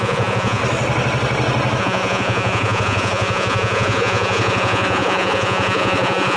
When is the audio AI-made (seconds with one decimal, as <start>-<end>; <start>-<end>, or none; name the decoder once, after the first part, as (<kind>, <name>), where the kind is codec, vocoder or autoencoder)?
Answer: 0.0-0.6 (vocoder, Vocos); 1.8-6.4